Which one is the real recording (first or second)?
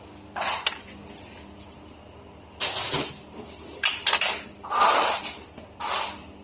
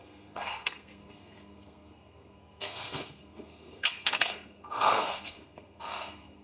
first